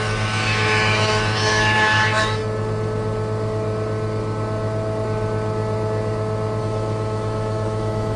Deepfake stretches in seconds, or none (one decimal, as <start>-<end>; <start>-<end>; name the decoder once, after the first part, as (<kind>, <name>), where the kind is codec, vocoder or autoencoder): 0.0-2.4 (autoencoder, DAC-VAE); 6.6-8.2